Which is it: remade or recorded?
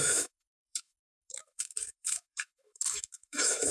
remade